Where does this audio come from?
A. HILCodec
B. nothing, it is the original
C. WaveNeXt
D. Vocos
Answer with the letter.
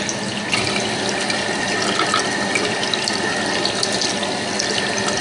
B